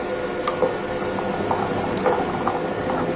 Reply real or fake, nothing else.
real